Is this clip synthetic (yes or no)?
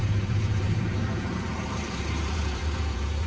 yes